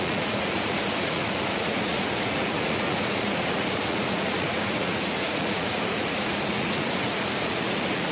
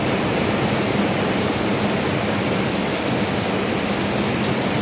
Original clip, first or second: second